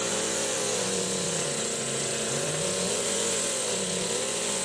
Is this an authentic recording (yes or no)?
no